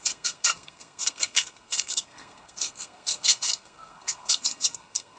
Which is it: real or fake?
fake